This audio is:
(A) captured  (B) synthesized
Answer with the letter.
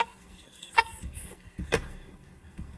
B